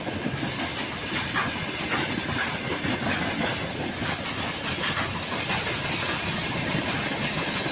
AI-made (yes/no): no